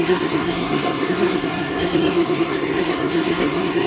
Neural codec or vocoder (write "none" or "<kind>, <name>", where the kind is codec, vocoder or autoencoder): codec, SNAC